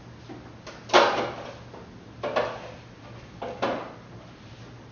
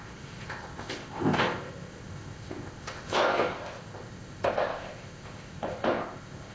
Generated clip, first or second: second